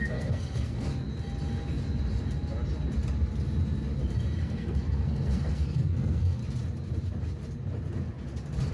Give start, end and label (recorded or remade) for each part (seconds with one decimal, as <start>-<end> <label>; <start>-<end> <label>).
0.0-0.9 remade; 0.9-4.4 recorded; 4.4-6.4 remade; 6.4-8.7 recorded